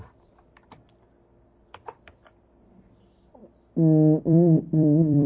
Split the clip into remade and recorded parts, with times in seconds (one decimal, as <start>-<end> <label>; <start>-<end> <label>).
0.0-3.4 remade; 3.4-4.2 recorded; 4.2-5.3 remade